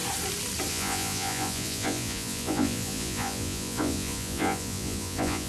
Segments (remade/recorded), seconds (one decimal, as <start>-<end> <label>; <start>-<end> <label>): 0.0-0.7 recorded; 0.7-5.5 remade

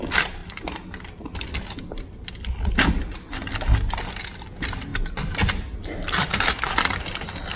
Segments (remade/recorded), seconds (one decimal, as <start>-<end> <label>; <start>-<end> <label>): 0.0-7.6 recorded